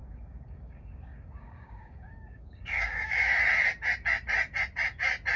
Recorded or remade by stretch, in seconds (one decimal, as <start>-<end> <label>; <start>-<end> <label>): 0.0-3.2 remade; 3.2-5.4 recorded